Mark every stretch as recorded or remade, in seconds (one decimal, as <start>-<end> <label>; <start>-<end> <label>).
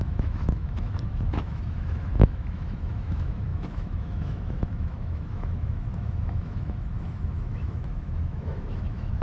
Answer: 0.0-9.2 remade